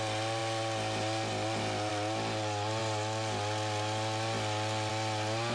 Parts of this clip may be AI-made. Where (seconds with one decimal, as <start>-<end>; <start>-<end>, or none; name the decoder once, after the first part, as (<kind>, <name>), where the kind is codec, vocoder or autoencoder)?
none